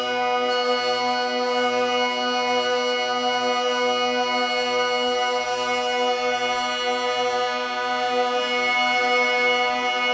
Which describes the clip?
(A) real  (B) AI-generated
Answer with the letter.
A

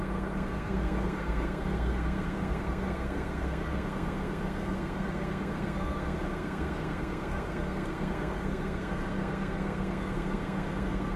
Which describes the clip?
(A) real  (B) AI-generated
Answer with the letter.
B